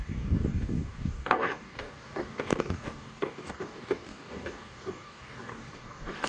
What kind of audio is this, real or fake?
fake